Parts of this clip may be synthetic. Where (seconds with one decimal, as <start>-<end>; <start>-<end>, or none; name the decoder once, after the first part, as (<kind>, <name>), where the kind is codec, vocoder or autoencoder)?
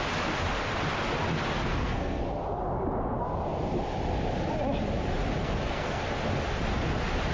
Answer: 1.7-2.2 (codec, SNAC); 5.4-6.0